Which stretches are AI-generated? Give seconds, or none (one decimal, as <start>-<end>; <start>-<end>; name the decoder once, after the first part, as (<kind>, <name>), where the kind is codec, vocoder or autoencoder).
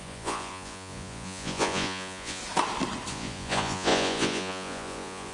0.0-2.4 (vocoder, Vocos); 3.1-5.3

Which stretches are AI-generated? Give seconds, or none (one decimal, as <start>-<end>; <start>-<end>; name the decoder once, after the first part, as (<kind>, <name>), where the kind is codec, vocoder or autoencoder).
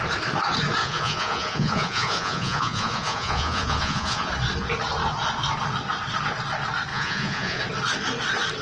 0.8-4.3 (vocoder, Vocos); 6.9-7.6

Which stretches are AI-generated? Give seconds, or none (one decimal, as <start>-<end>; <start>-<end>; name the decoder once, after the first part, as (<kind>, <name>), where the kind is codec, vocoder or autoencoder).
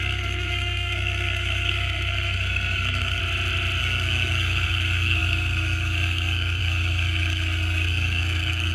0.0-3.2 (codec, SNAC); 3.8-8.7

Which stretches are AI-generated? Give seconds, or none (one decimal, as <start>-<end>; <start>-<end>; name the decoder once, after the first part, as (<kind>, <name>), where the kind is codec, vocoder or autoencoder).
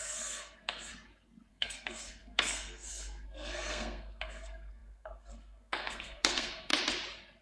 0.0-0.9 (codec, SNAC); 1.5-6.7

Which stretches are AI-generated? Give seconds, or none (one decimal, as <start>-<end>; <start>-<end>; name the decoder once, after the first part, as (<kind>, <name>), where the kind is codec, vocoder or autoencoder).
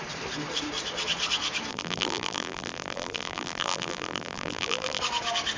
1.7-5.0 (vocoder, BigVGAN v2)